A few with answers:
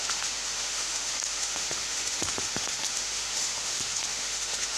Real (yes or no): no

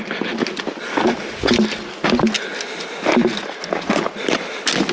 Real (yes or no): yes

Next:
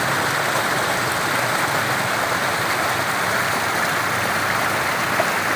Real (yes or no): yes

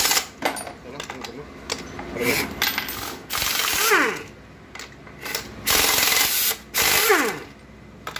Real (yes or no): yes